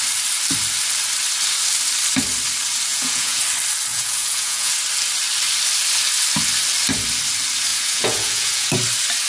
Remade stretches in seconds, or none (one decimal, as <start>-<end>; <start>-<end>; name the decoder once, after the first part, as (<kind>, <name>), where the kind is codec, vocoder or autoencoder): 2.9-3.4 (vocoder, Vocos); 3.9-4.7; 7.7-8.7